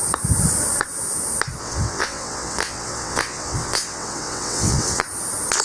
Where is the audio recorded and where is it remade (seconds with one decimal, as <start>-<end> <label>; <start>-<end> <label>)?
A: 0.0-1.6 recorded; 1.6-5.0 remade; 5.0-5.6 recorded